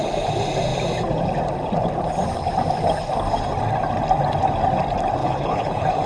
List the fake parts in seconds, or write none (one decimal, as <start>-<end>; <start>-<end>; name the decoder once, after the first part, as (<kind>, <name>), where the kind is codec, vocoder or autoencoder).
5.2-6.1 (codec, HILCodec)